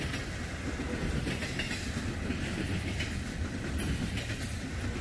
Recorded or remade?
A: recorded